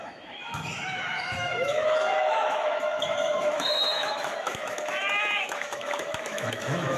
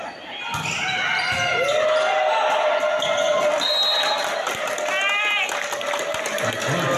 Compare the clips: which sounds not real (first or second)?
first